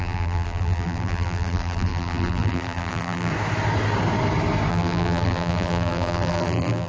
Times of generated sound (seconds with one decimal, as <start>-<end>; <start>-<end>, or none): 0.0-3.3; 4.7-6.9

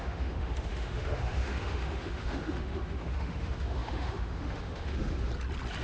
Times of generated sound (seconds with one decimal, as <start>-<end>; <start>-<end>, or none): 0.0-5.3

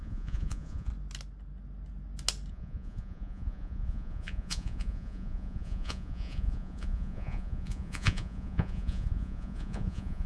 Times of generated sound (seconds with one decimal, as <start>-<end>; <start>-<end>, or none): 0.0-0.9; 2.5-10.3

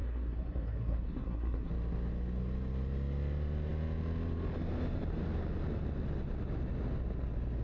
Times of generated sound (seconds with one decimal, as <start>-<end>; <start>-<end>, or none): 0.0-1.7

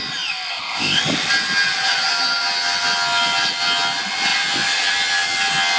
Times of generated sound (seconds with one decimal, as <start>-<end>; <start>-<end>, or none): 0.5-1.0

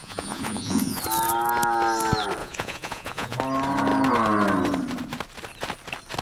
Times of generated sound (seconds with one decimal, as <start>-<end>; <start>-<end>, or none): 0.0-1.0; 2.4-3.4

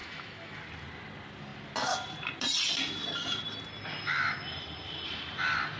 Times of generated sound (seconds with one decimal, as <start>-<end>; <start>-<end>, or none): 0.0-0.6

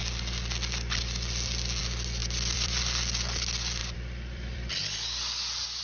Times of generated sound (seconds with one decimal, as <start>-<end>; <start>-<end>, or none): 2.2-2.8; 3.8-4.7